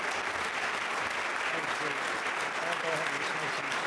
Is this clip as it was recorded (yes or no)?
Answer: yes